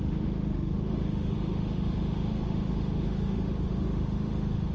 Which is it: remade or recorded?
remade